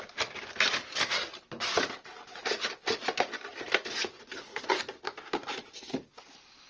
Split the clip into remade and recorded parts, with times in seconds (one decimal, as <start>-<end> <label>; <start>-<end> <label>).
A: 0.0-4.0 recorded; 4.0-4.7 remade; 4.7-6.7 recorded